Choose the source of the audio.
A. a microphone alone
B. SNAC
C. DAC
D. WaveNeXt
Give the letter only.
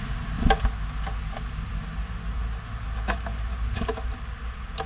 A